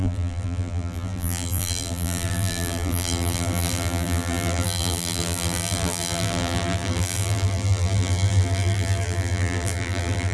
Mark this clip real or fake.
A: fake